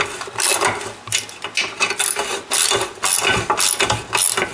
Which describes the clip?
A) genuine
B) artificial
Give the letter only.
A